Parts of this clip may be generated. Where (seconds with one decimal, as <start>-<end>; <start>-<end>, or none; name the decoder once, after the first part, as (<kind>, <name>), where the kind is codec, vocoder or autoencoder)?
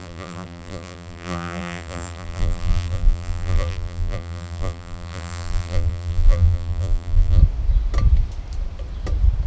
0.0-7.4 (vocoder, BigVGAN v2)